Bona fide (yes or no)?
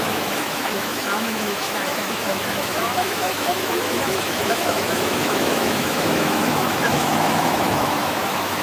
no